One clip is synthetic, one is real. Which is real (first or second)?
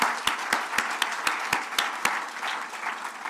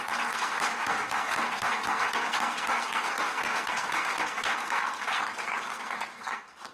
first